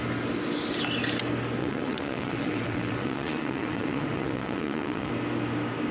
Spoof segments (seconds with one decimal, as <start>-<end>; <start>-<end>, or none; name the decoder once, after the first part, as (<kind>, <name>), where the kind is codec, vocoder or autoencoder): 1.6-5.1 (vocoder, WaveNeXt)